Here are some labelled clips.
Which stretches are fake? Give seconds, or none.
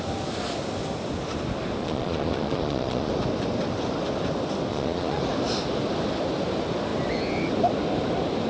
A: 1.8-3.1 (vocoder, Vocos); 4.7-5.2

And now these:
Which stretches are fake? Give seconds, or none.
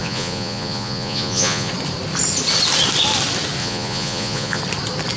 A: 0.0-1.7 (vocoder, Vocos); 3.6-4.6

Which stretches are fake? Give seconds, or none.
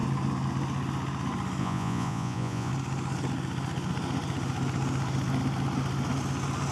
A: 1.6-2.7 (vocoder, Vocos)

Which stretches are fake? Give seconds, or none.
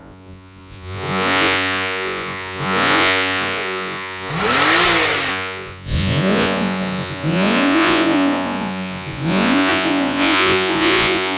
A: 0.0-4.3 (vocoder, Vocos); 5.3-11.4